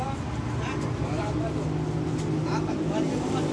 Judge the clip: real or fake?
real